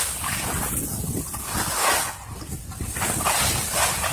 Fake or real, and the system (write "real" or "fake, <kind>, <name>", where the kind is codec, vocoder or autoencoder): real